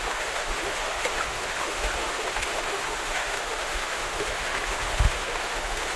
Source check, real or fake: fake